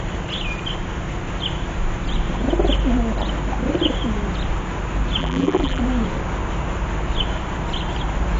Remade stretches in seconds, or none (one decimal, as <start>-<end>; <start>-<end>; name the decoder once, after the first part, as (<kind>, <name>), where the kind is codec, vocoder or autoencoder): 5.2-5.8 (vocoder, BigVGAN v2)